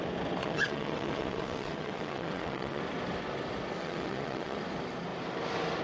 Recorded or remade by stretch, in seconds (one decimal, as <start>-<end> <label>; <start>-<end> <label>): 0.0-0.4 recorded; 0.4-2.8 remade; 2.8-3.8 recorded; 3.8-4.6 remade; 4.6-5.8 recorded

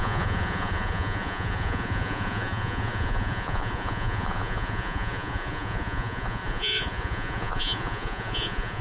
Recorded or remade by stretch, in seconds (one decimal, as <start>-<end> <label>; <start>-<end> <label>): 0.0-8.8 remade

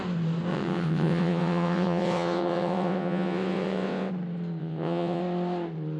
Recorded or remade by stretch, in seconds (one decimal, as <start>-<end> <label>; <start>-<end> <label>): 0.0-0.5 recorded; 0.5-4.1 remade; 4.1-4.6 recorded; 4.6-5.2 remade; 5.2-6.0 recorded

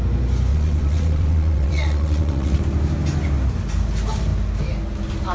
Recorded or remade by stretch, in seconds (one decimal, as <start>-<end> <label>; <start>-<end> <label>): 0.0-0.5 recorded; 0.5-2.6 remade; 2.6-5.3 recorded

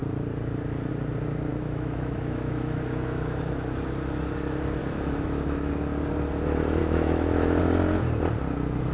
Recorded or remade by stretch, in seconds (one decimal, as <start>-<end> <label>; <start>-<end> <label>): 0.0-1.5 recorded; 1.5-3.4 remade; 3.4-4.8 recorded; 4.8-5.7 remade; 5.7-6.8 recorded; 6.8-7.6 remade; 7.6-8.9 recorded

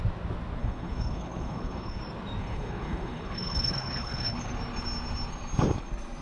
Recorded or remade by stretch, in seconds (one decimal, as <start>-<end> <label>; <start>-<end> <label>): 0.0-0.6 recorded; 0.6-2.0 remade; 2.0-2.4 recorded; 2.4-4.5 remade; 4.5-6.2 recorded

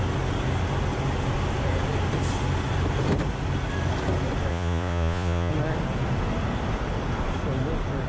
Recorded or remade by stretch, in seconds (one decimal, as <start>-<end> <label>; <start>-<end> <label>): 0.0-4.5 recorded; 4.5-5.5 remade; 5.5-8.1 recorded